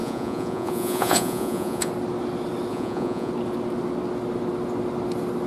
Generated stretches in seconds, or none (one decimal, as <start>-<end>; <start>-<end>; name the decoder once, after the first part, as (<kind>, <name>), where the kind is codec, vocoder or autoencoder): 0.0-1.9 (vocoder, Vocos); 2.7-3.3